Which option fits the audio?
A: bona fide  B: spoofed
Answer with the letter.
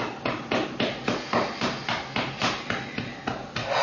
A